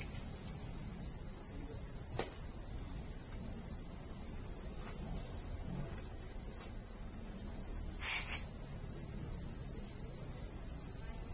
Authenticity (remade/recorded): recorded